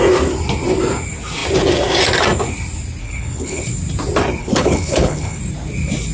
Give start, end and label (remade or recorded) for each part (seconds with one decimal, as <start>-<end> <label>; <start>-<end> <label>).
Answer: 0.0-3.0 recorded; 3.0-3.6 remade; 3.6-4.4 recorded; 4.4-5.4 remade; 5.4-6.1 recorded